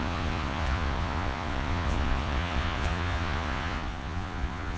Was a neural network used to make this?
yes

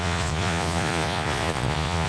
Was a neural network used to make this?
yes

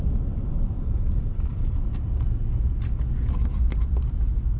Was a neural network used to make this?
no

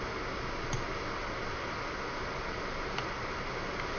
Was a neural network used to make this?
no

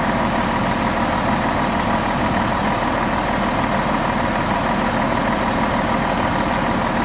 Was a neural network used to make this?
no